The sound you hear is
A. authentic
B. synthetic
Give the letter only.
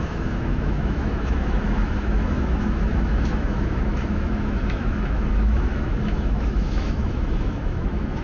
B